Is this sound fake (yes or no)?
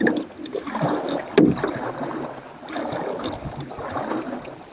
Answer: no